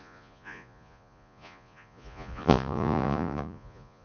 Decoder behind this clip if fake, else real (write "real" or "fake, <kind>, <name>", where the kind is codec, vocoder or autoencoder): fake, vocoder, Vocos